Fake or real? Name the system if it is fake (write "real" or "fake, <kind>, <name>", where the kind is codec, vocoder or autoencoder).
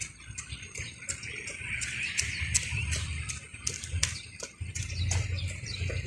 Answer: real